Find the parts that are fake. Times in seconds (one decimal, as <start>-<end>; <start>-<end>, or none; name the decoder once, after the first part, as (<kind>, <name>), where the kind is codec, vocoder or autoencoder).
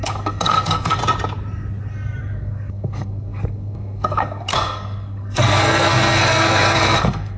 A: 0.0-1.0 (codec, SNAC); 2.2-7.4